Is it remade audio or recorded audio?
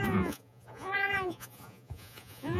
remade